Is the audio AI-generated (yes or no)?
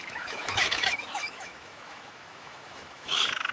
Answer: yes